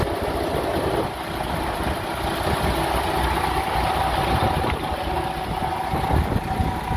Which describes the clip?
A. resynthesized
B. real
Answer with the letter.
B